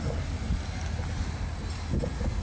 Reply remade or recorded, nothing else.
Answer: recorded